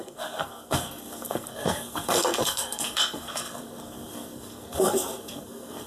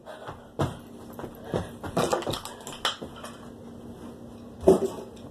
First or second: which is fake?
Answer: first